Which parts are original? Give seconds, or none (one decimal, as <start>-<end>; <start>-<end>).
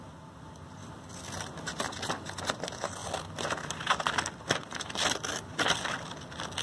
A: 0.0-0.8; 1.8-6.6